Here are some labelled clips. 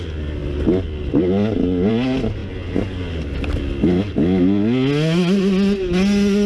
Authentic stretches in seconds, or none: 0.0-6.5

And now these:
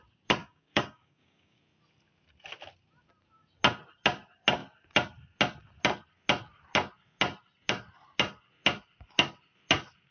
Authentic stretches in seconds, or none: 0.0-0.4; 1.6-10.1